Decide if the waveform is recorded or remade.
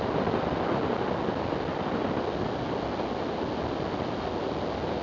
recorded